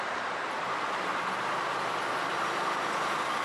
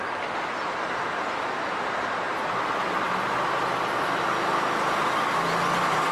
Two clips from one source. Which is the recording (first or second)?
second